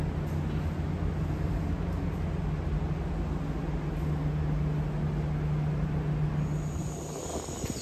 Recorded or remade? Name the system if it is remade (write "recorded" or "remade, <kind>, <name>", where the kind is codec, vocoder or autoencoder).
recorded